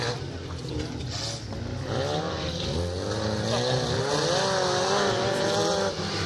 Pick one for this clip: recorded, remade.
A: recorded